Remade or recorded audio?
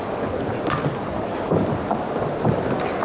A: recorded